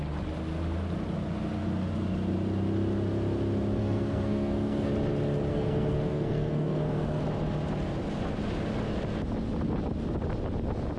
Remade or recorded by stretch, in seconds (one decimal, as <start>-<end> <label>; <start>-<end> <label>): 0.0-3.8 recorded; 3.8-4.9 remade; 4.9-5.5 recorded; 5.5-7.2 remade; 7.2-11.0 recorded